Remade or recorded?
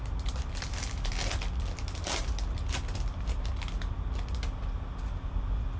recorded